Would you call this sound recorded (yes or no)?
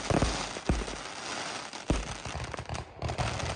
yes